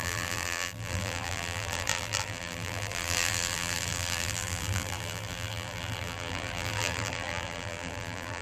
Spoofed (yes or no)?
yes